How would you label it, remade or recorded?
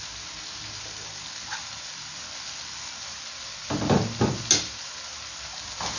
recorded